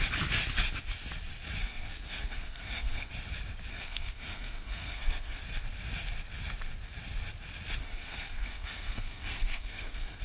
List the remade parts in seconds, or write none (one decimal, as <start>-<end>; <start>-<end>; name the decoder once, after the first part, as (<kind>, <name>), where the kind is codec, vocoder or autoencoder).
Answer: 1.6-3.1 (codec, SNAC); 3.7-5.4; 7.8-10.2